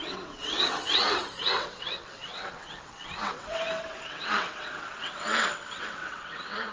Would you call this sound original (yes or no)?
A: no